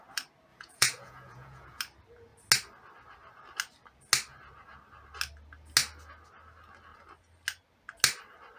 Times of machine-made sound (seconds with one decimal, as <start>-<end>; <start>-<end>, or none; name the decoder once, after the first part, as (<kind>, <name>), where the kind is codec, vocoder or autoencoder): 0.5-1.8 (vocoder, Vocos)